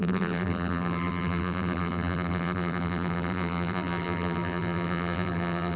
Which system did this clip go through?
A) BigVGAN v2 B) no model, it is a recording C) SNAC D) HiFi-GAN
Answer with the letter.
A